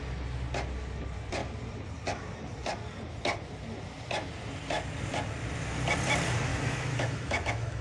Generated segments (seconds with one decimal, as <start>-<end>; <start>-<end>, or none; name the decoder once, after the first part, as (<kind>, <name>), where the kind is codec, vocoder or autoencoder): 6.5-7.8 (autoencoder, DAC-VAE)